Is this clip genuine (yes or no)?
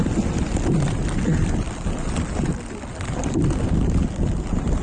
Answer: yes